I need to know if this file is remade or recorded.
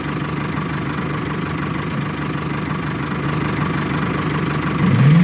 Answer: recorded